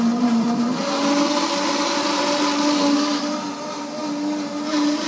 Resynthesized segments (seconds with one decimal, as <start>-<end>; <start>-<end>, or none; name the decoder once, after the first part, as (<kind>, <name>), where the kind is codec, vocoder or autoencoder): none